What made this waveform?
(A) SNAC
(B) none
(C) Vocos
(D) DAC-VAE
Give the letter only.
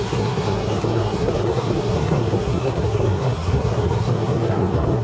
A